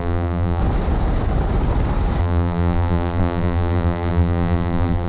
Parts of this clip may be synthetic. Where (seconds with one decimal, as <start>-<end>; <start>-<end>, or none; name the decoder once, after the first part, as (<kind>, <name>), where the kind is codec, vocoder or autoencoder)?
0.0-0.6 (vocoder, BigVGAN v2); 2.2-5.1

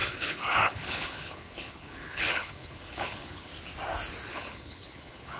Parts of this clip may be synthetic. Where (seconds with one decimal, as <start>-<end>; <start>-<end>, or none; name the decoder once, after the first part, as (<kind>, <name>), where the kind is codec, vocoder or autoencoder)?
0.0-3.5 (codec, HILCodec); 4.3-5.4

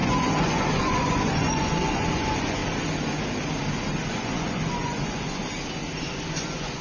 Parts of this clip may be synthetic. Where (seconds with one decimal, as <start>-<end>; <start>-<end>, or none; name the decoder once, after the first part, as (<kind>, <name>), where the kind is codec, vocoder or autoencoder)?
0.0-2.6 (vocoder, Vocos); 4.1-5.4; 6.0-6.8

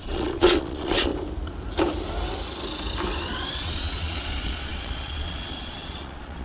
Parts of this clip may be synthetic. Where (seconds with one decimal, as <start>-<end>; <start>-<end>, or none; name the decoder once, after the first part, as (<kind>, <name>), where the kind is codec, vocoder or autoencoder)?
0.0-1.1 (vocoder, Vocos); 3.6-6.4

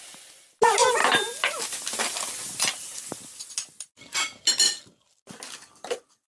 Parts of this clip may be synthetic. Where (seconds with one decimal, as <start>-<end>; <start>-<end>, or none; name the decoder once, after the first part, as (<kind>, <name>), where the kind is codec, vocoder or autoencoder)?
none

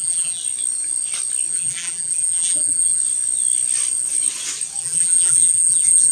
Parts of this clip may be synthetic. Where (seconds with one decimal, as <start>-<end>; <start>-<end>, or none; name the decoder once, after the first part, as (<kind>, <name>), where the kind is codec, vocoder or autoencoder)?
0.0-0.4 (vocoder, BigVGAN v2); 1.5-3.0; 4.8-6.1

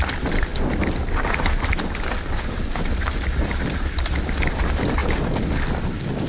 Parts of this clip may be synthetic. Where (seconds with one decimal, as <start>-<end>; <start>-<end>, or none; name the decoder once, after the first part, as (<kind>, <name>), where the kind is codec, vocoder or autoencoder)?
none

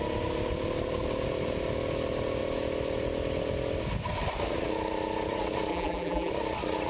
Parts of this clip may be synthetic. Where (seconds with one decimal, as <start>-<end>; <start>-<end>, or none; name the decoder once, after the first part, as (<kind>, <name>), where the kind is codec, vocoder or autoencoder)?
5.7-6.3 (vocoder, BigVGAN v2)